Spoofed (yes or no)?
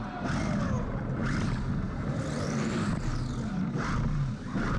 no